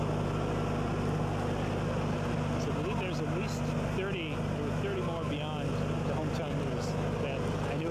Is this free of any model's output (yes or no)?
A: yes